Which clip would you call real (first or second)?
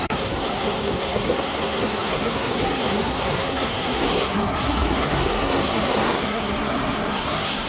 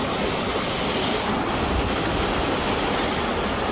second